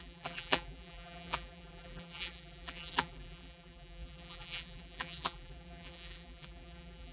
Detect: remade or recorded remade